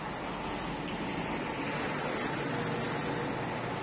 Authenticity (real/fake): real